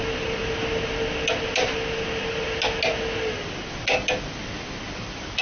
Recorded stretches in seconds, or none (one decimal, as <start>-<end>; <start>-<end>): 0.0-5.4